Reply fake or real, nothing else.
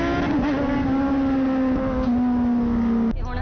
real